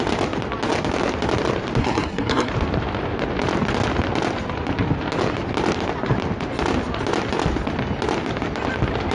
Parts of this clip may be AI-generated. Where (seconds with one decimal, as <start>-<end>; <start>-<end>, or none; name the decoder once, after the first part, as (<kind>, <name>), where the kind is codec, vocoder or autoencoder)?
1.8-2.5 (codec, SNAC)